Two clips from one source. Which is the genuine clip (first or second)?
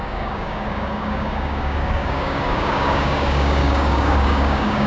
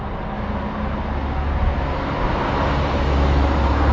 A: second